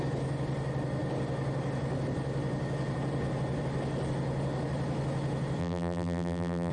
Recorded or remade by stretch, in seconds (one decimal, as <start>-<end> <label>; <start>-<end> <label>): 0.0-5.6 recorded; 5.6-6.7 remade